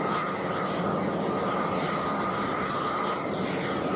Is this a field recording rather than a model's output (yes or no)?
yes